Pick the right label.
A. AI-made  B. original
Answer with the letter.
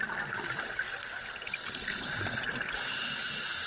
B